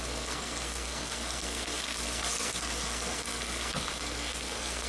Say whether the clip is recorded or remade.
remade